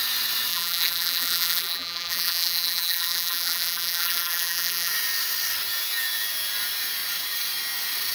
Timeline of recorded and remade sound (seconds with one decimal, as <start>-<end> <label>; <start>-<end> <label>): 0.0-0.5 recorded; 0.5-4.9 remade; 4.9-8.1 recorded